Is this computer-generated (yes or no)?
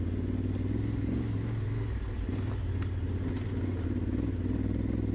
no